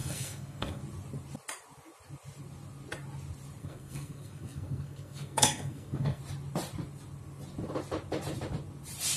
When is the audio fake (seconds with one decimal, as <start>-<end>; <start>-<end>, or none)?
0.0-0.8; 3.6-6.2